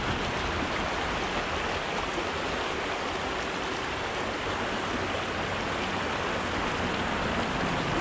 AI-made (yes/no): no